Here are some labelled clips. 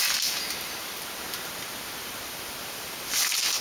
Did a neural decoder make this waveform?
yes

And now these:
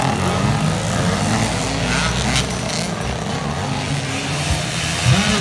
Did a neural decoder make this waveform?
no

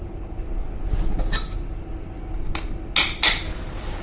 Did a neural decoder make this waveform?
no